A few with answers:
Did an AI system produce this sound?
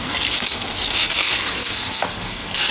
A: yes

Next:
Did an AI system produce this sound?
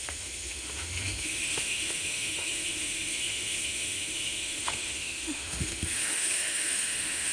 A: yes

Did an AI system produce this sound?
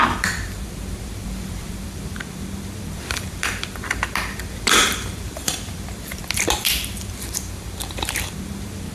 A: yes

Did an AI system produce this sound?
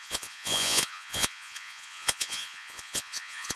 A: yes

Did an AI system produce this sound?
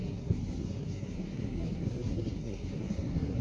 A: yes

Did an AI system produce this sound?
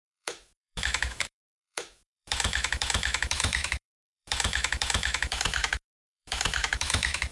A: yes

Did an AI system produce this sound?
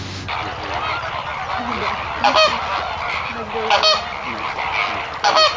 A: no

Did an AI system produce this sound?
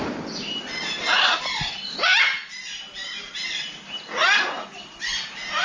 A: no